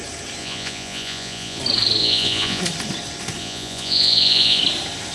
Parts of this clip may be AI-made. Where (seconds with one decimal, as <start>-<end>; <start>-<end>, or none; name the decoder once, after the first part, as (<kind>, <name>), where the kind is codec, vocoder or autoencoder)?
0.4-1.6 (vocoder, Vocos); 2.0-2.6; 3.4-4.6